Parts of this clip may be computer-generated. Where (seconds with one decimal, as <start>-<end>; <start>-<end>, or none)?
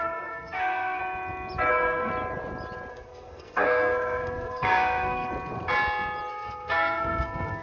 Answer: 0.0-1.0; 1.7-2.1; 2.9-5.3; 6.3-7.6